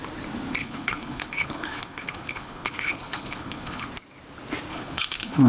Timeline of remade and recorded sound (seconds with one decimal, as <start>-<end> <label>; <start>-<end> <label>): 0.0-0.6 recorded; 0.6-3.9 remade; 3.9-4.7 recorded; 4.7-5.5 remade